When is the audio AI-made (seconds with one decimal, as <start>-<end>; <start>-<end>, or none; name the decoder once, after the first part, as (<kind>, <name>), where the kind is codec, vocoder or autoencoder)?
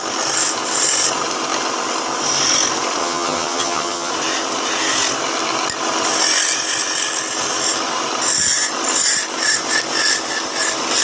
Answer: 3.0-4.1 (vocoder, HiFi-GAN)